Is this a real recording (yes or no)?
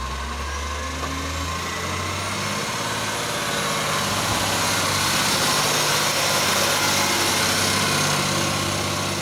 yes